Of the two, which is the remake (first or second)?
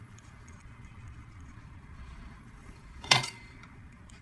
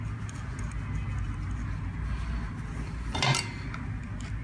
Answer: first